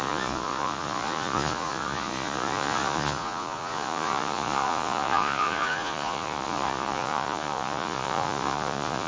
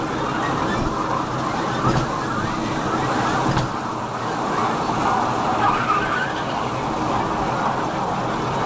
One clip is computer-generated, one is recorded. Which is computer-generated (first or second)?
first